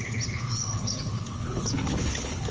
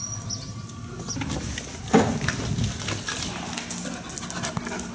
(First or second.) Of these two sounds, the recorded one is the second